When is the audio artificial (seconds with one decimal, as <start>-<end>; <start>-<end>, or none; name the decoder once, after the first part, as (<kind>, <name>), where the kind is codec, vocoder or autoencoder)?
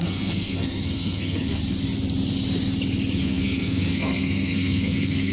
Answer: 0.0-1.6 (codec, SNAC); 3.2-5.3